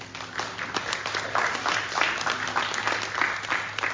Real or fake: real